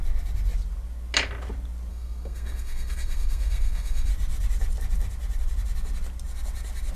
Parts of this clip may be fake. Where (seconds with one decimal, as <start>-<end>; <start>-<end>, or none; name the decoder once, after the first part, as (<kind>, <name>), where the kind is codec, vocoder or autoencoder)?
1.9-4.1 (codec, SNAC)